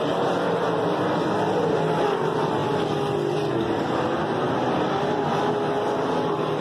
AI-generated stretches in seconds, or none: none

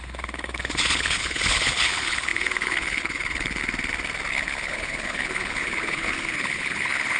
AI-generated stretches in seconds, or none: 0.0-3.6; 4.3-7.2

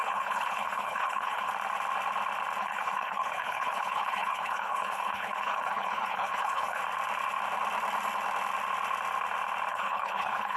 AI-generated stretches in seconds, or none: 0.0-1.5; 2.6-6.8; 9.7-10.6

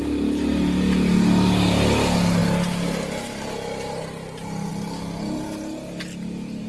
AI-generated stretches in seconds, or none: none

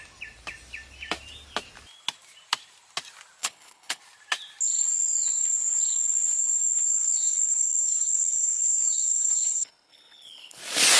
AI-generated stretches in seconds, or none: 3.4-4.0; 6.9-10.6

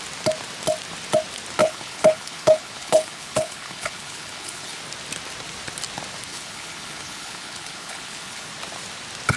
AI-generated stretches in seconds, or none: 1.6-4.8; 6.3-8.5

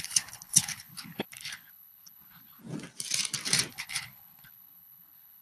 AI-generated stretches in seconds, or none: 0.0-2.6; 3.7-5.4